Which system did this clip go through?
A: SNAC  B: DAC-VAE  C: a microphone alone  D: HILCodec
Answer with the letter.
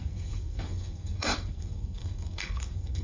A